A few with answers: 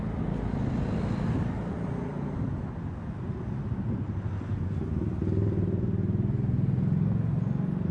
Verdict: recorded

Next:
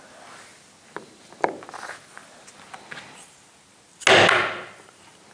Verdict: recorded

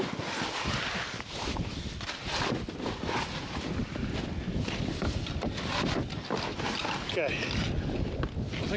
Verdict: recorded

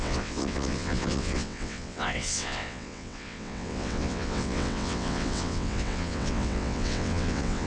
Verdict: remade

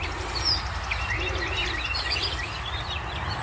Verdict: recorded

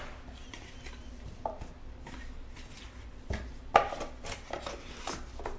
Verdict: recorded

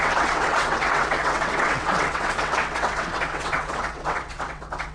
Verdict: remade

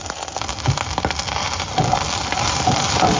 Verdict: recorded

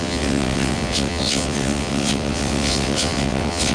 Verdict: remade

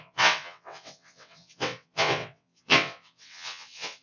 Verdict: remade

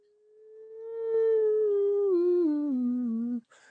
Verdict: recorded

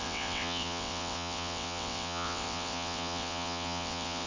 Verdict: remade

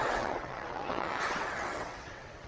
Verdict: remade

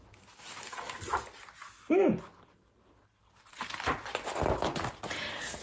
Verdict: recorded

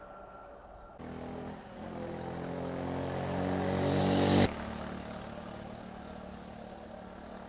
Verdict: recorded